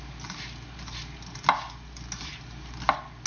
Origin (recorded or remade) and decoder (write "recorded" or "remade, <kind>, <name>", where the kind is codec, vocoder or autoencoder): recorded